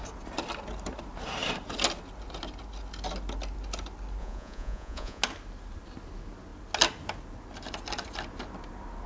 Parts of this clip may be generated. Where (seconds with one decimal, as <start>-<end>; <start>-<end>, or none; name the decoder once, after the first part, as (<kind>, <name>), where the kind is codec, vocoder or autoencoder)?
4.2-5.2 (vocoder, Vocos)